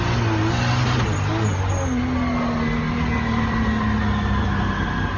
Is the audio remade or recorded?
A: recorded